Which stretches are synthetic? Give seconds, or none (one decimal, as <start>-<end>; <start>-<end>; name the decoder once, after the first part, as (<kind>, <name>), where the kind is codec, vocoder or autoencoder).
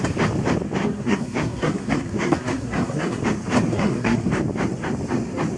0.8-3.2 (codec, SNAC); 3.7-4.3